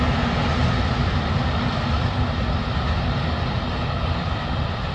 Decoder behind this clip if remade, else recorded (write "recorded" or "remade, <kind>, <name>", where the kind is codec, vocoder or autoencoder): recorded